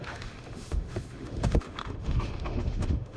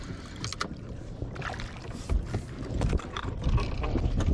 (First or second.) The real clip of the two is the second